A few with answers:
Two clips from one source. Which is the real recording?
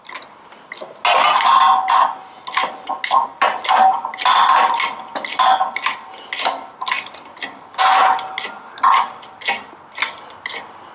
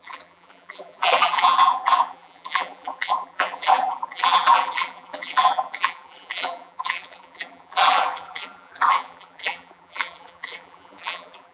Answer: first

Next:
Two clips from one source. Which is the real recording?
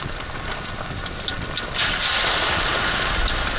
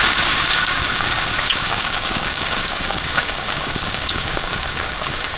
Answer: first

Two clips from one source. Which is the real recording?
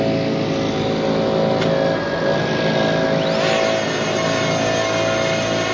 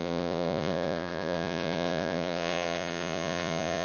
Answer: first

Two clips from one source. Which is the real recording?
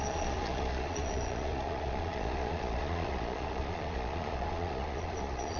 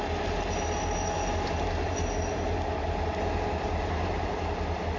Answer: second